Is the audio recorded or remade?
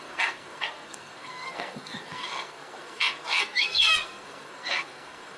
remade